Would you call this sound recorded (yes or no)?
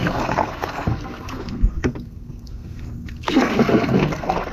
no